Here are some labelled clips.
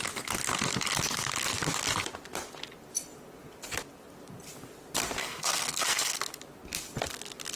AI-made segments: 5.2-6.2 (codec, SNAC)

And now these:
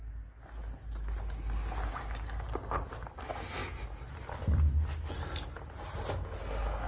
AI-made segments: none